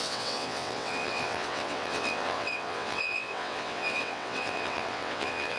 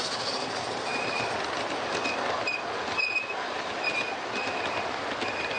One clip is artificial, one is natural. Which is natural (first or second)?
second